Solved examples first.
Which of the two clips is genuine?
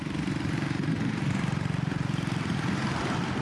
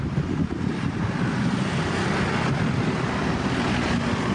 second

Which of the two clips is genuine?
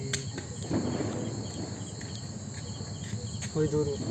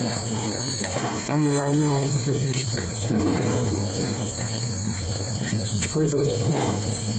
first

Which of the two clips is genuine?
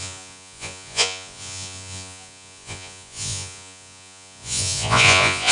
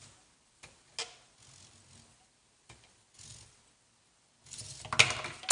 second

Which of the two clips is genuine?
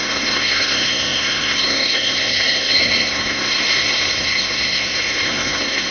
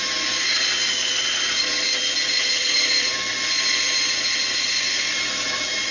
second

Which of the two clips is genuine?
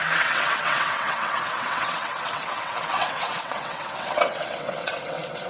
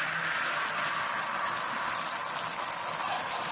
second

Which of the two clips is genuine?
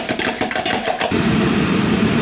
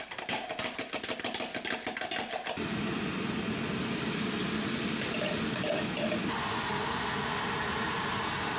second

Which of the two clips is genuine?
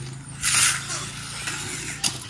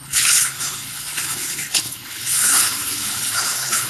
first